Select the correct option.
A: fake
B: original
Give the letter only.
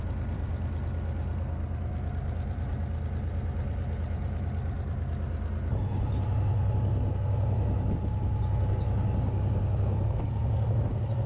B